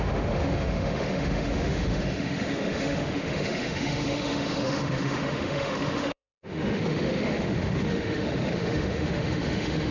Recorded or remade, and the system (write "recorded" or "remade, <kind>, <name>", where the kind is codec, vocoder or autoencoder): remade, autoencoder, DAC-VAE